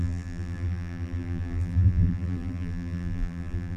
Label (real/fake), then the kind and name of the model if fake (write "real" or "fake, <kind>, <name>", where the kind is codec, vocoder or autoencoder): fake, vocoder, BigVGAN v2